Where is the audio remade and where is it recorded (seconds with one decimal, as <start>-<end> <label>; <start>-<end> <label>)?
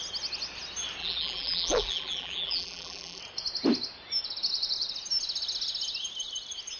0.0-1.0 recorded; 1.0-3.2 remade; 3.2-6.8 recorded